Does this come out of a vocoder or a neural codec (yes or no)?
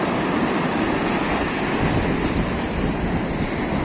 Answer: no